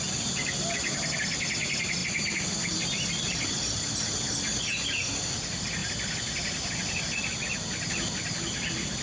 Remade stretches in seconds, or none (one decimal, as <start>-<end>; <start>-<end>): none